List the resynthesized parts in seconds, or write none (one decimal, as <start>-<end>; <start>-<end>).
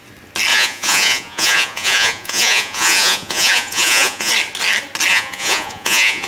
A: 0.5-4.3; 5.1-6.3